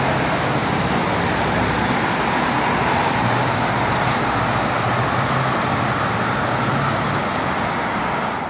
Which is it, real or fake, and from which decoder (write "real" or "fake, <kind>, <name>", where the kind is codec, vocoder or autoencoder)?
real